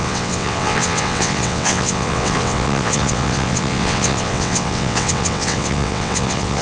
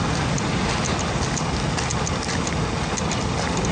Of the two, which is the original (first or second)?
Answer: second